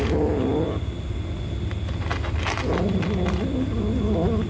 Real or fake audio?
real